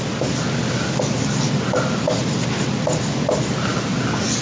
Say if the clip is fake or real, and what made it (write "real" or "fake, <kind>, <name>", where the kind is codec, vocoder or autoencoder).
real